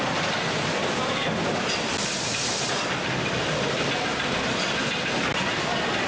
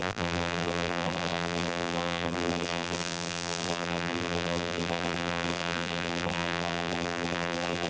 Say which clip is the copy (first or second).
second